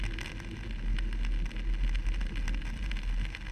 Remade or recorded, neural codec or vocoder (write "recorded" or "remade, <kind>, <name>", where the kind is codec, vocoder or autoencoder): recorded